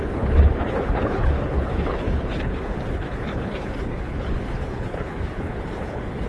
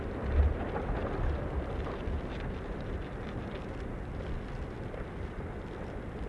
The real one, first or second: second